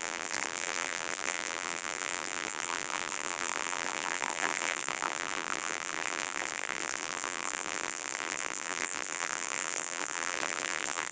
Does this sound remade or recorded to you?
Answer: remade